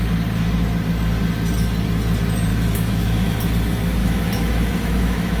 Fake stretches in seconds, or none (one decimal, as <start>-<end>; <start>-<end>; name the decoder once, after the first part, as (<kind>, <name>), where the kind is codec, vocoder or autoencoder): 2.5-3.5 (autoencoder, DAC-VAE); 4.0-5.4

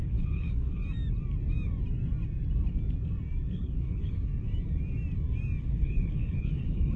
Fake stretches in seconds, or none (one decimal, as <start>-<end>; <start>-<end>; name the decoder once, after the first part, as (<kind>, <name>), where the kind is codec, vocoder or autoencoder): 0.0-0.8 (codec, HILCodec); 3.5-4.3; 5.6-7.0

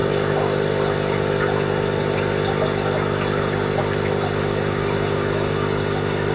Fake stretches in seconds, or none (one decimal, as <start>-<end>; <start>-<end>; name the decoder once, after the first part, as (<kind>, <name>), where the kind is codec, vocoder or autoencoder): none

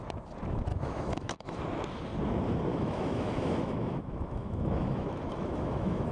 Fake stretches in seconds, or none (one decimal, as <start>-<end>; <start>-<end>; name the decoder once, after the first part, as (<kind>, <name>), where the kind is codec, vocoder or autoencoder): 0.7-1.6 (autoencoder, DAC-VAE); 2.7-6.1

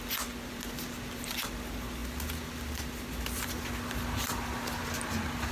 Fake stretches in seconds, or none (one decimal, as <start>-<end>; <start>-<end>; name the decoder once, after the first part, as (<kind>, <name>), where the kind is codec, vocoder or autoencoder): none